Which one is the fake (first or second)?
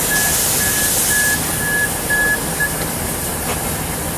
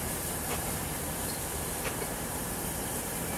second